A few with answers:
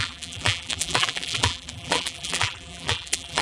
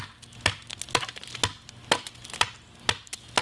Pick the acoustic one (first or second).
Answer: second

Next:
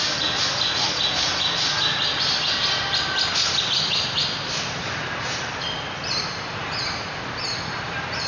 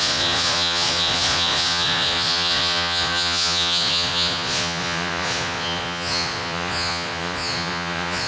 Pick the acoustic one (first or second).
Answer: first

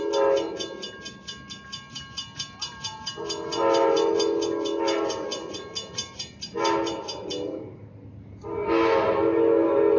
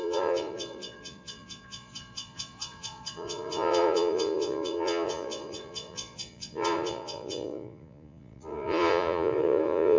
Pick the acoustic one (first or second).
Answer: first